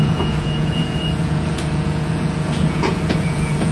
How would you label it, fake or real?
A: fake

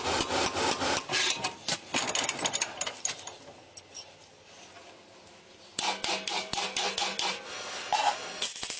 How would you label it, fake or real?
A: real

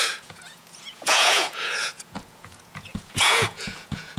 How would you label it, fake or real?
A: fake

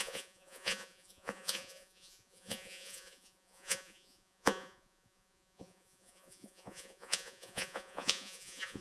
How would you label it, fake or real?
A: fake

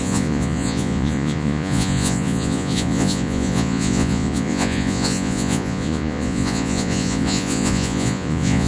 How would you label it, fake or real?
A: fake